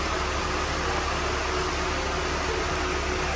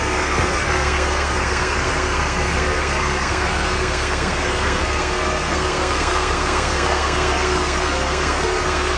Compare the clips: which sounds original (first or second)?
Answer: first